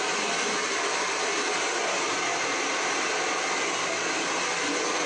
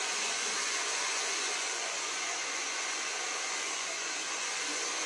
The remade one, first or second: second